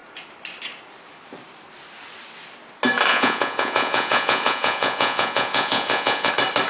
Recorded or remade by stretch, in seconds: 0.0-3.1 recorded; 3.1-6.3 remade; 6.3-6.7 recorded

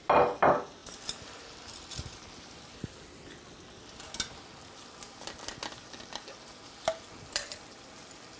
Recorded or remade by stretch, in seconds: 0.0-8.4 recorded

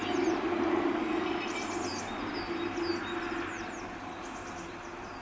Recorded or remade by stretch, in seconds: 0.0-5.2 recorded

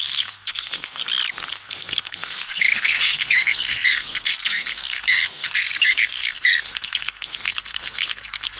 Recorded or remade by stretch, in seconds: 0.0-1.0 remade; 1.0-1.5 recorded; 1.5-8.6 remade

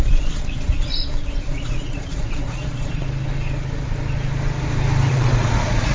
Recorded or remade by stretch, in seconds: 0.0-0.9 remade; 0.9-1.5 recorded; 1.5-3.0 remade; 3.0-5.1 recorded; 5.1-5.9 remade